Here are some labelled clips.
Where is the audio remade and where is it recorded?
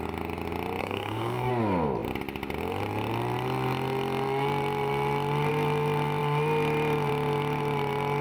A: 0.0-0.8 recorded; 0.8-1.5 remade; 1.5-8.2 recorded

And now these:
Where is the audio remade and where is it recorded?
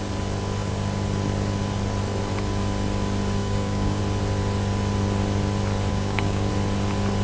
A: 0.0-3.4 recorded; 3.4-4.0 remade; 4.0-5.9 recorded; 5.9-6.5 remade; 6.5-7.2 recorded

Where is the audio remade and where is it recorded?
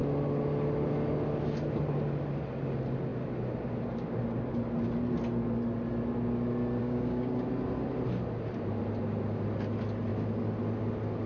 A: 0.0-6.8 recorded; 6.8-7.5 remade; 7.5-11.3 recorded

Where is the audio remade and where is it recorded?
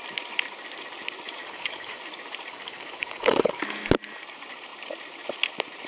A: 0.0-1.4 recorded; 1.4-2.0 remade; 2.0-2.5 recorded; 2.5-3.6 remade; 3.6-5.9 recorded